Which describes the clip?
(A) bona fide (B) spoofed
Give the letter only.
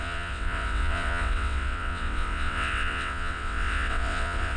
B